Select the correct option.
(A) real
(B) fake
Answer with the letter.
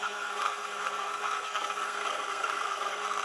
B